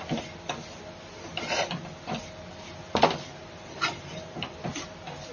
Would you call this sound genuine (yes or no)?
yes